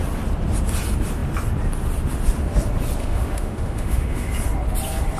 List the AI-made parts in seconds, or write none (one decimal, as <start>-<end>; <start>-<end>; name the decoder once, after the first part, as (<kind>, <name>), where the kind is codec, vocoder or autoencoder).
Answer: 3.0-4.3 (autoencoder, DAC-VAE)